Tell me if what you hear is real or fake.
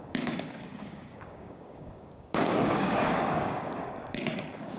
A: fake